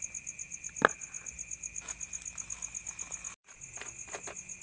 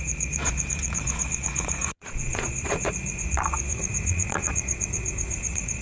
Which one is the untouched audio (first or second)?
first